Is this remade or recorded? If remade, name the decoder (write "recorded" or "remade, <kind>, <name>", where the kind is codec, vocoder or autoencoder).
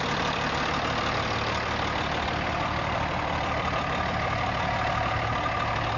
recorded